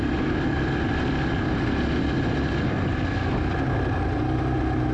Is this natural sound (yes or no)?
yes